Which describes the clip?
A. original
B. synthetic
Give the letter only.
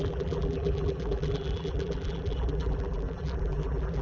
B